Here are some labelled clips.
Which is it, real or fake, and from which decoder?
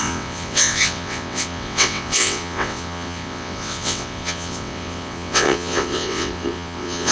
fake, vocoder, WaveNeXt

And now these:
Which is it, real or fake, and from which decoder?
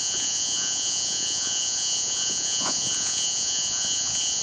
fake, vocoder, Vocos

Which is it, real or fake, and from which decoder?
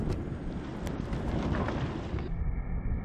fake, vocoder, BigVGAN v2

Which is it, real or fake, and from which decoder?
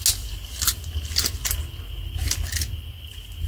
real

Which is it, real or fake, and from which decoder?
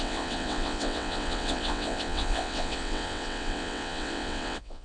fake, vocoder, WaveNeXt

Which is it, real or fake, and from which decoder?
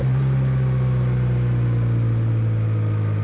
real